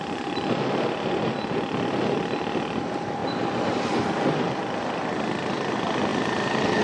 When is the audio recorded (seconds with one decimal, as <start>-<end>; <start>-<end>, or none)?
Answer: 0.0-6.8